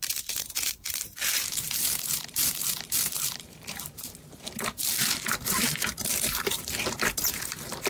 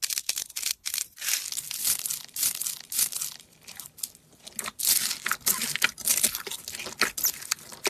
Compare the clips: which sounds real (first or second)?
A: second